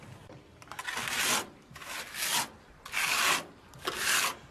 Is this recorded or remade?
recorded